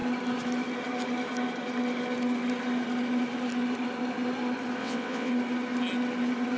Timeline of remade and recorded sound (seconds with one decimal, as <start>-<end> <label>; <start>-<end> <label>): 0.0-4.8 recorded; 4.8-5.3 remade; 5.3-6.6 recorded